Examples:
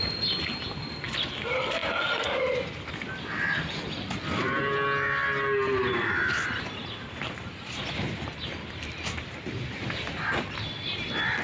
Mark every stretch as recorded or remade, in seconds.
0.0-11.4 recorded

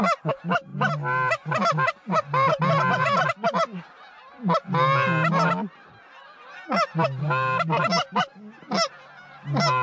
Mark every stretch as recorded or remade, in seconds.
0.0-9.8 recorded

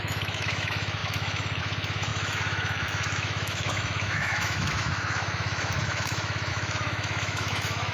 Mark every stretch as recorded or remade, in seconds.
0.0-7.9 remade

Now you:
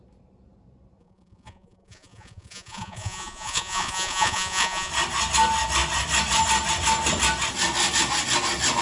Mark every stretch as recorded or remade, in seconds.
0.0-1.0 recorded; 1.0-4.9 remade; 4.9-8.8 recorded

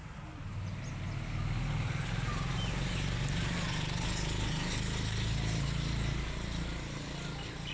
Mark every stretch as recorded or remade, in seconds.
0.0-7.7 recorded